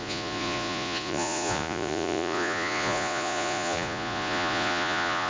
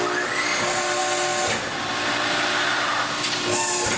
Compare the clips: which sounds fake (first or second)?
first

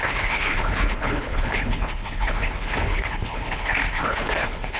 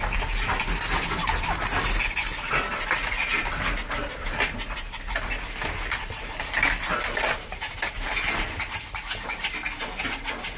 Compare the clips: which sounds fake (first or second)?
first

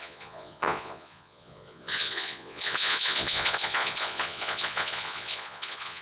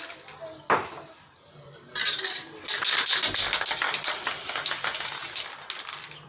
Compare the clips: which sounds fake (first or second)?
first